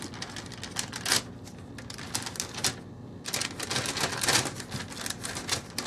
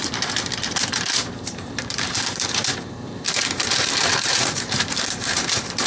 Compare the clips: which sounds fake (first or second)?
second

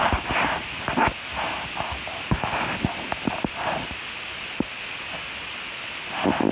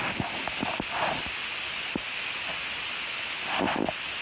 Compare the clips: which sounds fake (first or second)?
second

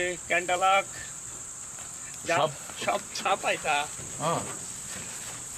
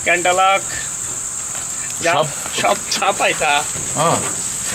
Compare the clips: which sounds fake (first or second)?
first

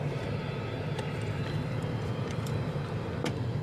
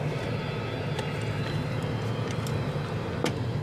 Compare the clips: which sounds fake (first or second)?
first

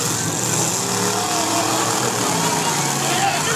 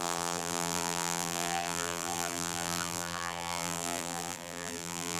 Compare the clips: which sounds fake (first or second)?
second